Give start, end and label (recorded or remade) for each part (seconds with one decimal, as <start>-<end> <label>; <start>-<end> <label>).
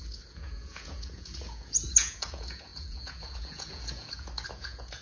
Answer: 0.0-5.0 remade